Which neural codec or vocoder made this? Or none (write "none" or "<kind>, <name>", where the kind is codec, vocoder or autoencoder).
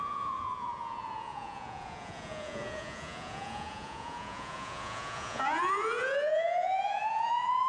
vocoder, Vocos